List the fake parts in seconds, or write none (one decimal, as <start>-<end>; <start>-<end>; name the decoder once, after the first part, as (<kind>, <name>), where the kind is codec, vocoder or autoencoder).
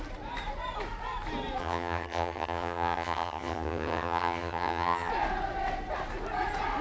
1.6-5.1 (vocoder, HiFi-GAN)